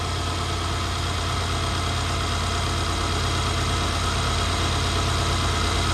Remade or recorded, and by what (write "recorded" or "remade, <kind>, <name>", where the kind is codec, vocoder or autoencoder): recorded